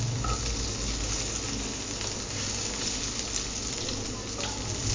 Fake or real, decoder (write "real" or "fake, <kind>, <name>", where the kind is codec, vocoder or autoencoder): real